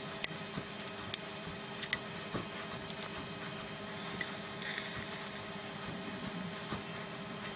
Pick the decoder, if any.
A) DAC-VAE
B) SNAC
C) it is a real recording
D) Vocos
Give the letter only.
C